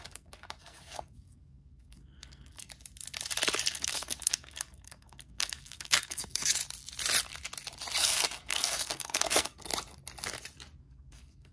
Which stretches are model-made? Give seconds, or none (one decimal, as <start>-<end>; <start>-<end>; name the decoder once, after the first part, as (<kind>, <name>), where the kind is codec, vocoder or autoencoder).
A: 0.0-2.7 (codec, SNAC); 3.7-6.6; 8.0-9.7; 10.8-11.5

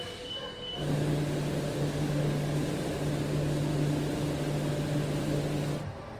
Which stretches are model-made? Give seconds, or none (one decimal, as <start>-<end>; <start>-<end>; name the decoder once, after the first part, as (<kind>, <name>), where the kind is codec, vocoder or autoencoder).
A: 0.0-1.1 (codec, DAC); 1.8-2.6; 3.2-3.7

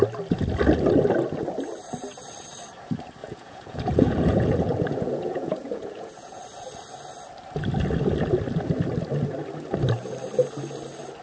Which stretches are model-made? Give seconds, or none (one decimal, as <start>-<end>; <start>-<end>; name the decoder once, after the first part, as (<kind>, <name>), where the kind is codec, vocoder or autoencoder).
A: 3.2-6.4 (vocoder, Vocos)